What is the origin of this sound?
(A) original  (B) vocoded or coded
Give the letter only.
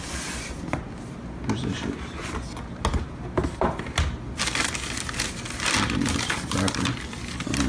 A